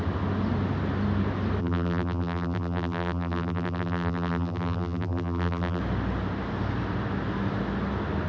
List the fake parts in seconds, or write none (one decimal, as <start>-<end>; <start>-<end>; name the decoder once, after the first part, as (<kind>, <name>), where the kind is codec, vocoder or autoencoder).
1.6-5.8 (vocoder, BigVGAN v2)